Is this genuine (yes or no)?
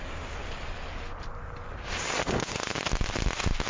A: yes